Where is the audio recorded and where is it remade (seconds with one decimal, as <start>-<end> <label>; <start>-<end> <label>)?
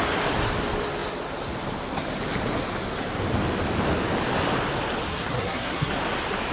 0.0-5.1 recorded; 5.1-5.9 remade; 5.9-6.5 recorded